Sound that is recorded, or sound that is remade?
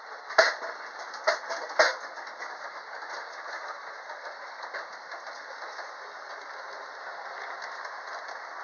recorded